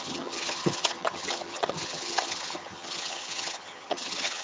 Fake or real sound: fake